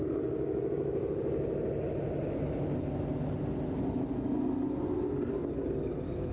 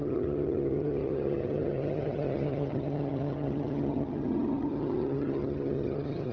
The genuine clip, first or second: first